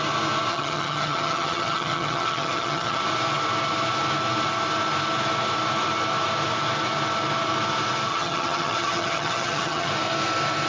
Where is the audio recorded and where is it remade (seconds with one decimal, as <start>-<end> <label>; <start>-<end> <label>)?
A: 0.0-0.5 recorded; 0.5-3.0 remade; 3.0-8.1 recorded; 8.1-9.9 remade; 9.9-10.7 recorded